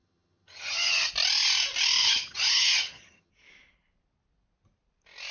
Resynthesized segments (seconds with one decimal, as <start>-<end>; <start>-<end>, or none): 0.0-1.1; 2.0-3.3